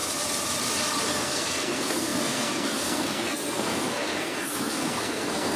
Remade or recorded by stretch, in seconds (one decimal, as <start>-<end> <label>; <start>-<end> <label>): 0.0-1.1 recorded; 1.1-5.6 remade

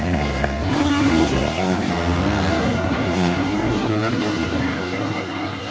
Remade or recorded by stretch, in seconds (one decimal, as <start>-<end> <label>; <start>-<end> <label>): 0.0-1.9 remade; 1.9-2.5 recorded; 2.5-5.7 remade

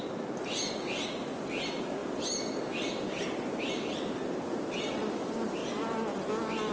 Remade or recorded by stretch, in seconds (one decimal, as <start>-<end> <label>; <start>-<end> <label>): 0.0-6.7 recorded

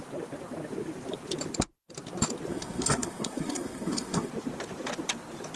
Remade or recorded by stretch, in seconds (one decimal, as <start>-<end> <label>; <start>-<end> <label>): 0.0-2.5 recorded; 2.5-4.3 remade; 4.3-5.6 recorded

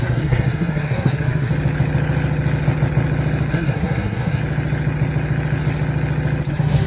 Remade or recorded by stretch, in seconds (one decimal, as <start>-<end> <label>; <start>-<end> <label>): 0.0-1.5 remade; 1.5-3.5 recorded; 3.5-4.4 remade; 4.4-6.5 recorded; 6.5-6.9 remade